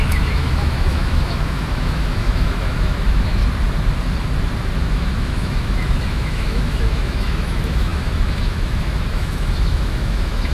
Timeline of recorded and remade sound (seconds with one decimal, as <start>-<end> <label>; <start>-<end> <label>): 0.0-3.4 remade; 3.4-4.8 recorded; 4.8-10.5 remade